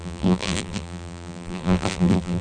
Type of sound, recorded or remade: remade